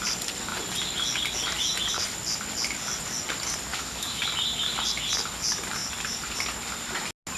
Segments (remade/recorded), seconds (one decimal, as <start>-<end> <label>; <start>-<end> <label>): 0.0-3.7 recorded; 3.7-4.2 remade; 4.2-7.4 recorded